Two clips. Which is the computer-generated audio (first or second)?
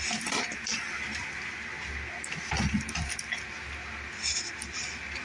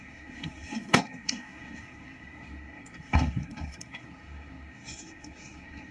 second